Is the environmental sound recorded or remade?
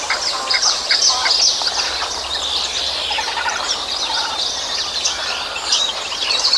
recorded